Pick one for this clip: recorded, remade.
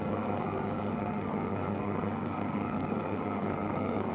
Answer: remade